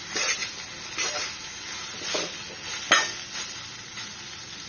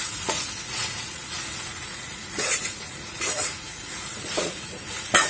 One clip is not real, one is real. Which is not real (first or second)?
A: second